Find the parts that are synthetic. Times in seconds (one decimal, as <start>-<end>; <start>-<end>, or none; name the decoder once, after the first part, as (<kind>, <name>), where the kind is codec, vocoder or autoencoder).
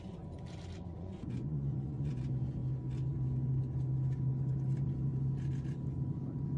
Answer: 0.9-2.1 (vocoder, Vocos)